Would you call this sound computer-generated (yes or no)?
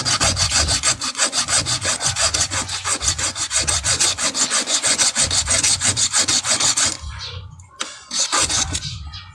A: yes